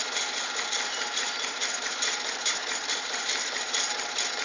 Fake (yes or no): yes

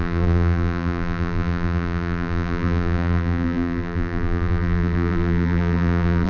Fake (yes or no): yes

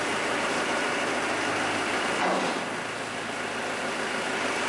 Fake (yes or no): no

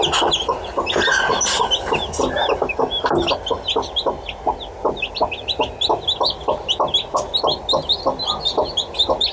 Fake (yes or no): no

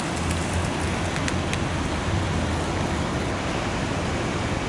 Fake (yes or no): no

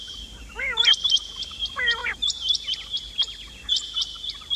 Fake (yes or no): no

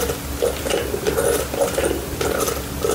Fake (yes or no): no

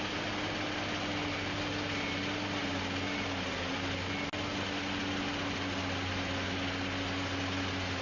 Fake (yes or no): no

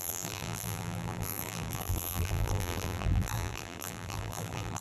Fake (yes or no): yes